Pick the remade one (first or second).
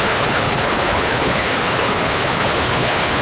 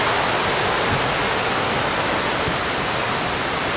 first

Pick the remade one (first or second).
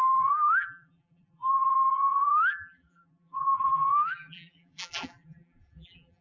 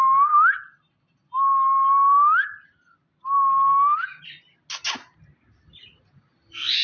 first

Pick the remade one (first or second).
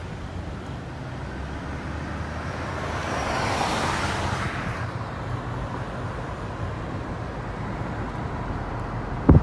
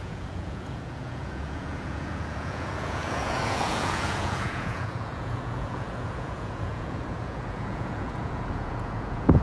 second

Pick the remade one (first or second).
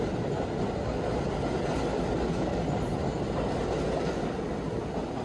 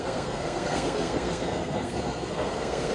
second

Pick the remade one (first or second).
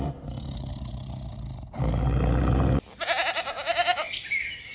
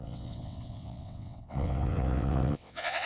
second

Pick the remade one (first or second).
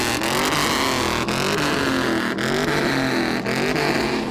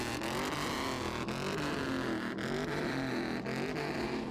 second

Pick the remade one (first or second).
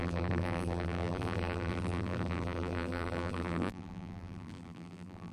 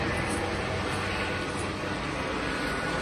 first